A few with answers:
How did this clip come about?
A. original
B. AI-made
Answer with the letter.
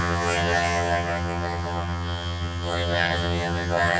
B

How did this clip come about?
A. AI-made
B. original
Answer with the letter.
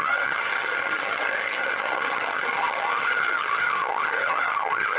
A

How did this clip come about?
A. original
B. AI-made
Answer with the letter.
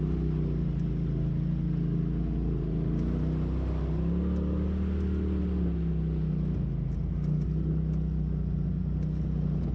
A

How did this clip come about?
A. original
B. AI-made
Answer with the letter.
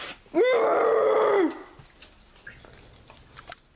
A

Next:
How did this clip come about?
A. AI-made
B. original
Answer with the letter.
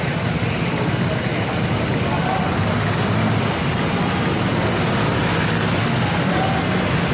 B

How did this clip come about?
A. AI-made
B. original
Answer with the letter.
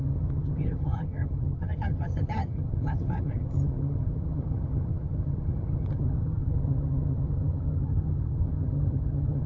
A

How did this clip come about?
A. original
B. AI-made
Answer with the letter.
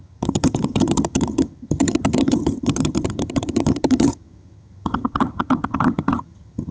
B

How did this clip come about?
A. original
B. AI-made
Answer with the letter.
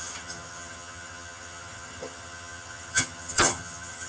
B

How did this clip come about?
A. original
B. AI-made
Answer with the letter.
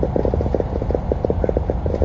A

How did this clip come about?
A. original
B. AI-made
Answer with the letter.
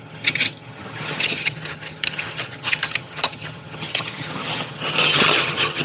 B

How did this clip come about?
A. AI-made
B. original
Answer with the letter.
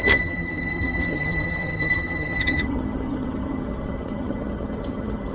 A